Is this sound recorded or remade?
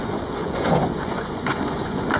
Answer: remade